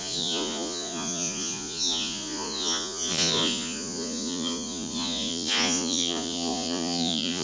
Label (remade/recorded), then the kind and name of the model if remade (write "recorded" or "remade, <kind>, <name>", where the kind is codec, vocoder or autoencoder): remade, vocoder, Vocos